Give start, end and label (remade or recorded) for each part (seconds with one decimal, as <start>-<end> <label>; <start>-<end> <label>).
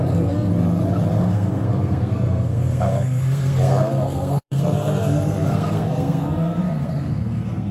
0.0-0.5 remade; 0.5-1.2 recorded; 1.2-7.7 remade